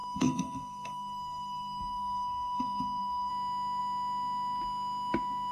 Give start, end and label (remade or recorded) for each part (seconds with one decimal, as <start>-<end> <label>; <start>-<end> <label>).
0.0-3.3 remade; 3.3-5.5 recorded